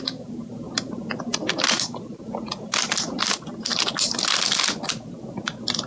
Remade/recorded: recorded